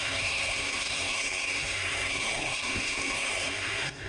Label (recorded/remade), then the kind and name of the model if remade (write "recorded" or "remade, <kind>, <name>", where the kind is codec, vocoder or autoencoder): remade, codec, SNAC